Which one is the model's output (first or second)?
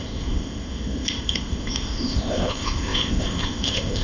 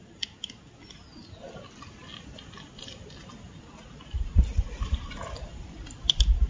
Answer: first